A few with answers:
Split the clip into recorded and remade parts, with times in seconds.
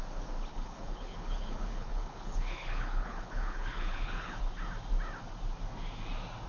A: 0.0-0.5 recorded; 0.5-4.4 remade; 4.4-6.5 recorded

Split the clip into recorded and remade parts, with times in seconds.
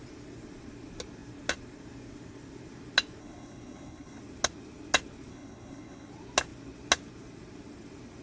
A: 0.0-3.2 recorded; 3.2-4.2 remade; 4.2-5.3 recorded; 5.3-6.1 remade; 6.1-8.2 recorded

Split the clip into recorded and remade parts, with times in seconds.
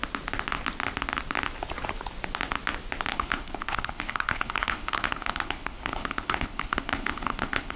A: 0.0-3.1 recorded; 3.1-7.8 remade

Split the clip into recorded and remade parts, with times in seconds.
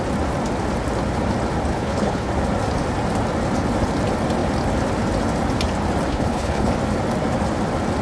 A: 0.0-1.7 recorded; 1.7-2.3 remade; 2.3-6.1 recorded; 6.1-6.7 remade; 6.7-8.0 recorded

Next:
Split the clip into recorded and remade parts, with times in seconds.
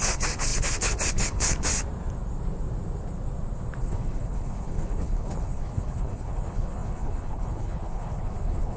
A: 0.0-1.7 remade; 1.7-3.8 recorded; 3.8-8.8 remade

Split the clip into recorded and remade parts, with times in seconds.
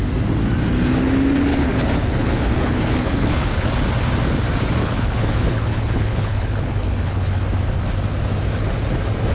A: 0.0-1.5 recorded; 1.5-3.7 remade; 3.7-4.8 recorded; 4.8-7.4 remade; 7.4-9.3 recorded